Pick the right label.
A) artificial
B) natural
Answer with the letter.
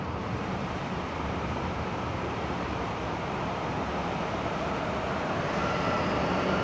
A